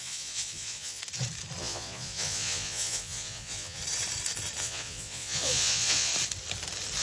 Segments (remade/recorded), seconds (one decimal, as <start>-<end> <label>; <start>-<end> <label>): 0.0-1.0 remade; 1.0-1.6 recorded; 1.6-3.8 remade; 3.8-4.6 recorded; 4.6-6.1 remade; 6.1-7.0 recorded